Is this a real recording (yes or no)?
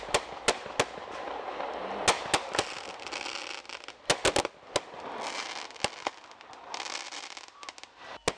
yes